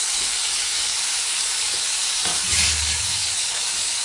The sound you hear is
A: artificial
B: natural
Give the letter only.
A